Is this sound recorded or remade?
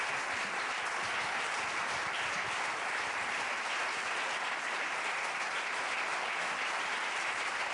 recorded